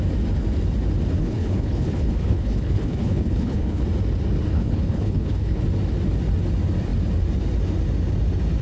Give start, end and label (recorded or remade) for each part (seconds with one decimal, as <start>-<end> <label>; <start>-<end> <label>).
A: 0.0-1.2 recorded; 1.2-3.8 remade; 3.8-4.5 recorded; 4.5-5.6 remade; 5.6-8.6 recorded